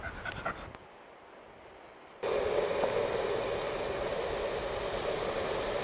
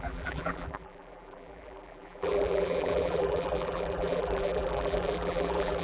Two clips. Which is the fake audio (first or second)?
second